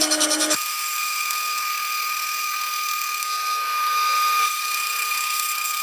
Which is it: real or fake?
fake